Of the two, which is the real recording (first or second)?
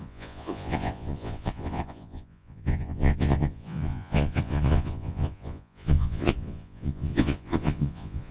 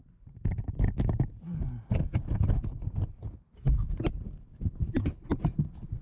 second